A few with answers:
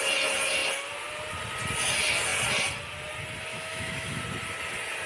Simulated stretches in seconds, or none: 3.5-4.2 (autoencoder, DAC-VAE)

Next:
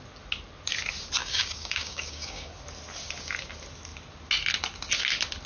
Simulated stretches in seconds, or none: 1.2-2.5 (codec, DAC)

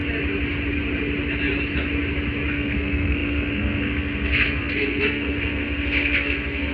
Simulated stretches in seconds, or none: 2.5-6.7 (codec, SNAC)

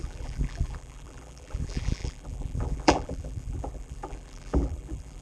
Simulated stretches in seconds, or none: 0.0-5.2 (vocoder, BigVGAN v2)

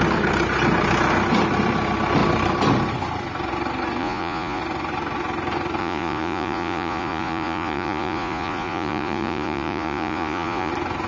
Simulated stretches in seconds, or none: 4.0-4.6 (vocoder, Vocos); 5.8-10.7

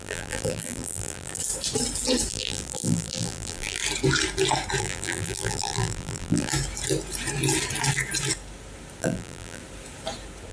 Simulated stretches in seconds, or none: 0.0-1.4 (vocoder, BigVGAN v2); 2.3-3.8; 4.8-6.5; 9.0-9.6

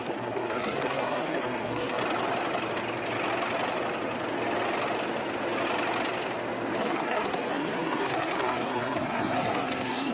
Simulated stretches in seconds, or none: 0.0-2.0 (codec, SNAC); 6.8-10.1

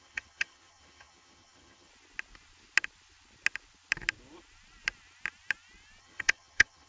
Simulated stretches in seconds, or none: 0.0-1.9 (vocoder, HiFi-GAN); 6.0-6.9